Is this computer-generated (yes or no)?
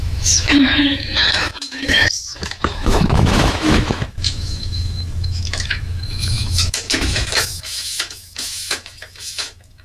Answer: yes